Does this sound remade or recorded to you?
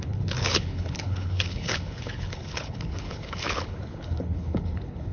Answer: remade